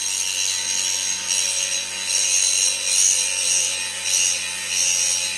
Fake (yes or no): no